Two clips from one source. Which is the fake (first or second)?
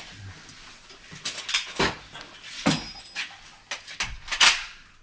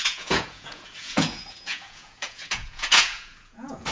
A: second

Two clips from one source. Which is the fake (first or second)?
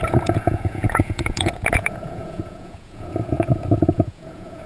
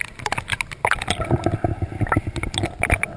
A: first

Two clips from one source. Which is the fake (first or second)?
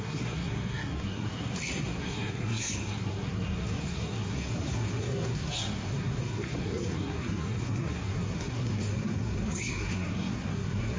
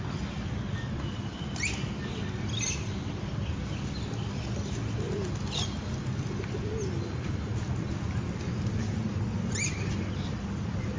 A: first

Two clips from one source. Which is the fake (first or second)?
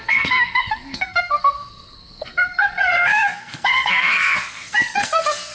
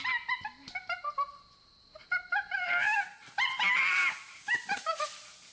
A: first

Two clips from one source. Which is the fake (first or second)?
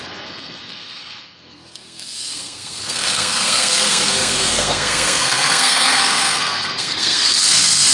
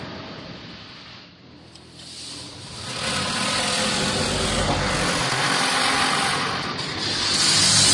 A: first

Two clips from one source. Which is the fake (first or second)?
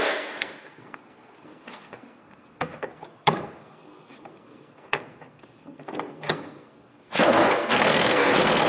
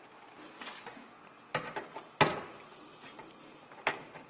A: first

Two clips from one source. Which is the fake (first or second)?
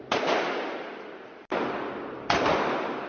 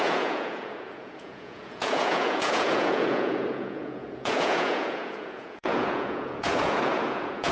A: second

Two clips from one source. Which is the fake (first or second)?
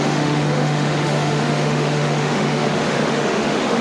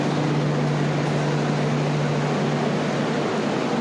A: first